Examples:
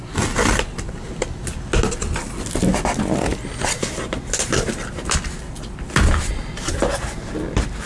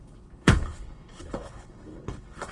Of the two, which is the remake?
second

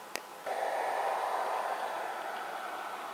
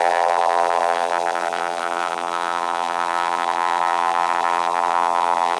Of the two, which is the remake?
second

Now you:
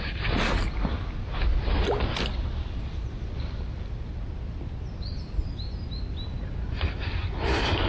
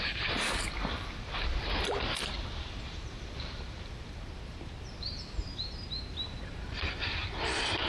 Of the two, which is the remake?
second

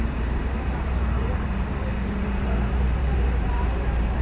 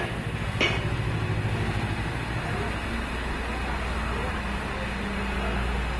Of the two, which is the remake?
first